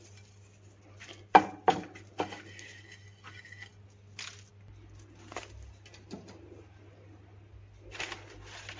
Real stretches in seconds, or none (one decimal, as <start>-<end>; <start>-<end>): 0.0-8.8

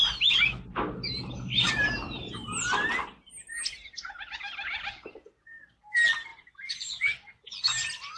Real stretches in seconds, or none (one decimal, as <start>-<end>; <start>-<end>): 0.0-8.2

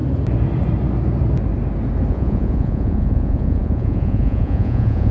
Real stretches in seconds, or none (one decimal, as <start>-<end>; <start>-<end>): 0.0-2.1

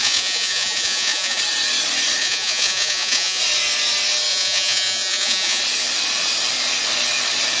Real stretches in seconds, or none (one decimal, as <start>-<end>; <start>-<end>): 1.4-2.2; 3.4-4.3; 5.6-7.6

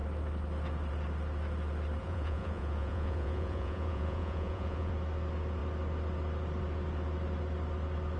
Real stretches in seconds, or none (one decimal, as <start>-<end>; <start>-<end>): 0.0-2.0; 4.9-8.2

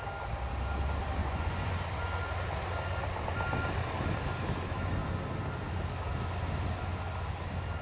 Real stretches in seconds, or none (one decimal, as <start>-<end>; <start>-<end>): 0.0-1.2; 1.8-7.8

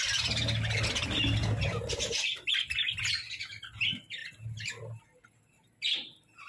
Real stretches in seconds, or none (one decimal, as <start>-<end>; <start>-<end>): 0.0-6.5